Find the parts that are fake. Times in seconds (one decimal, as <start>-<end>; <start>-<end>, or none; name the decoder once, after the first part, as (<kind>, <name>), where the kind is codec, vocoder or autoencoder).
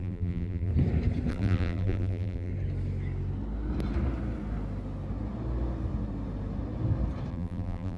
0.0-0.7 (vocoder, BigVGAN v2); 1.3-2.5; 7.3-8.0